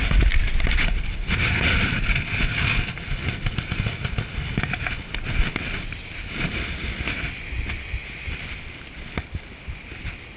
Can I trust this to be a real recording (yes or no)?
yes